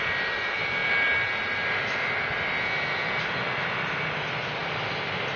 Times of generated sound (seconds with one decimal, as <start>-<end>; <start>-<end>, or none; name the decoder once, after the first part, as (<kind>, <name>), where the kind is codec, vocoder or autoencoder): none